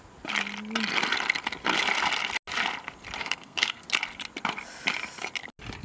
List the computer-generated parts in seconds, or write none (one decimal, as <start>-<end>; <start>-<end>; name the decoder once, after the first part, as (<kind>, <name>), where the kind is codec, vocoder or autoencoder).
3.2-3.8 (codec, SNAC)

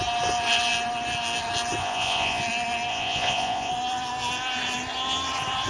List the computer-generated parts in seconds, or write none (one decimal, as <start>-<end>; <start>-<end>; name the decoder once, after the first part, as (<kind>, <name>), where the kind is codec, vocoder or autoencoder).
1.8-2.4 (vocoder, Vocos); 2.9-3.7

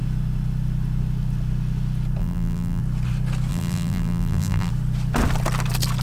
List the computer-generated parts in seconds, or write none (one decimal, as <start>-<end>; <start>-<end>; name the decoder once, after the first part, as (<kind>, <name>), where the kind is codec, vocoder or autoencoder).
2.2-2.8 (vocoder, BigVGAN v2); 3.5-4.7

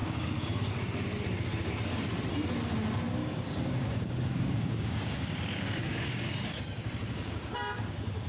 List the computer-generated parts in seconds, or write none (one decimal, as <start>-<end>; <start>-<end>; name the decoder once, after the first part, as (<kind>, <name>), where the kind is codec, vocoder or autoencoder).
0.0-0.7 (codec, DAC); 3.2-8.3

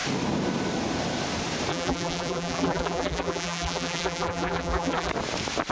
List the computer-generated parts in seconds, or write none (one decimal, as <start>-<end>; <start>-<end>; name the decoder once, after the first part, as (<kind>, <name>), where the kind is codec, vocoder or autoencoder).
1.7-5.1 (vocoder, BigVGAN v2)

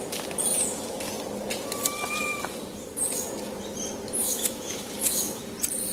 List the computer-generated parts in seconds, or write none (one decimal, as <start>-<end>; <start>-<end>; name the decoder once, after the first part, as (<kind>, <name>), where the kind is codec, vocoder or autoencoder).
4.2-5.4 (autoencoder, DAC-VAE)